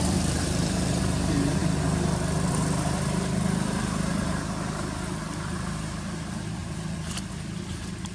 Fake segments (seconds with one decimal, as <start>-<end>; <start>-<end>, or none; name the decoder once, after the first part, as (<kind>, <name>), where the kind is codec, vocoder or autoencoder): 0.0-1.6 (vocoder, BigVGAN v2); 2.5-8.1